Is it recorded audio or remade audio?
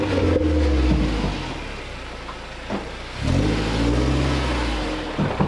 recorded